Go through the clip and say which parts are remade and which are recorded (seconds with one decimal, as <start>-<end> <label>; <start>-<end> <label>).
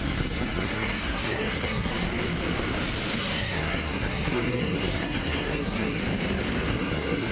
0.0-1.9 remade; 1.9-3.2 recorded; 3.2-6.0 remade; 6.0-6.7 recorded; 6.7-7.3 remade